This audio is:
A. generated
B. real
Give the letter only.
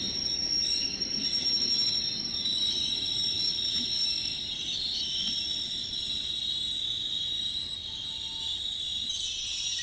B